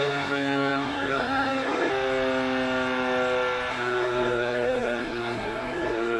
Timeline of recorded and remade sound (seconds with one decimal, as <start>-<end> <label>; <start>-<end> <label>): 0.0-1.9 remade; 1.9-3.7 recorded; 3.7-6.2 remade